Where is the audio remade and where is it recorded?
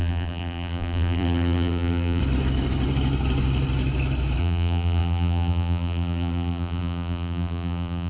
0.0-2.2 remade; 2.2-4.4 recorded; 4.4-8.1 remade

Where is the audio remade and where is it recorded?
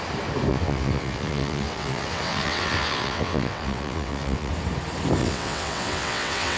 0.0-0.5 recorded; 0.5-4.5 remade; 4.5-5.2 recorded; 5.2-6.6 remade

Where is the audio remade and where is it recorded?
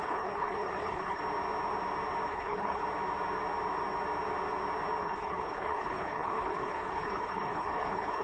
0.0-1.2 remade; 1.2-2.3 recorded; 2.3-2.8 remade; 2.8-5.0 recorded; 5.0-8.2 remade